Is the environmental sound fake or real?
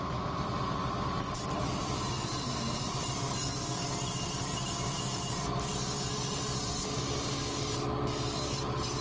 real